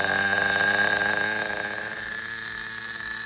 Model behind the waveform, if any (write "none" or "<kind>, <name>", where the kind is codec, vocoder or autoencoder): none